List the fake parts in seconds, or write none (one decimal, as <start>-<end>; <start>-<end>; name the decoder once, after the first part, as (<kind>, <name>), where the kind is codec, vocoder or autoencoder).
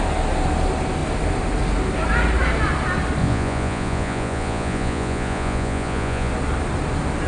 3.2-6.3 (vocoder, Vocos)